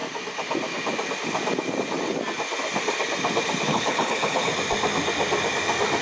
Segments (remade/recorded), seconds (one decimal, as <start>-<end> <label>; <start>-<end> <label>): 0.0-3.7 recorded; 3.7-4.5 remade; 4.5-6.0 recorded